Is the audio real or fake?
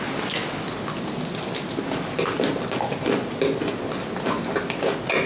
real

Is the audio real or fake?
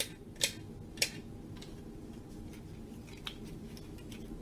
real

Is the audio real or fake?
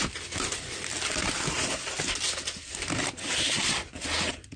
real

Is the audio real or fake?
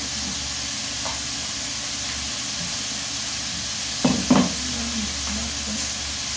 real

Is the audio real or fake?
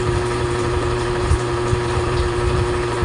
fake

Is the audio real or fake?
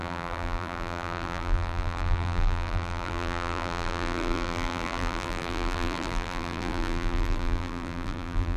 fake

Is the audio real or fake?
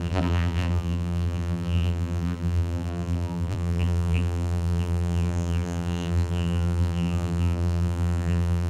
fake